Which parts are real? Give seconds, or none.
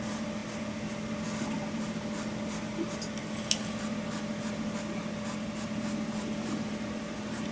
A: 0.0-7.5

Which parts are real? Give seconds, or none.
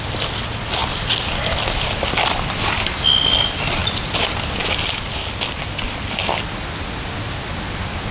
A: 0.0-8.1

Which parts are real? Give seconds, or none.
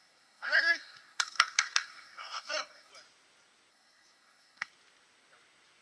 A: 2.9-3.7; 4.7-5.8